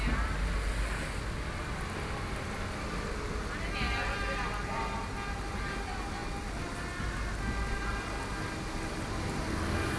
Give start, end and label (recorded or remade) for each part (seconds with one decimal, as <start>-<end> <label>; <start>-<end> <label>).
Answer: 0.0-10.0 recorded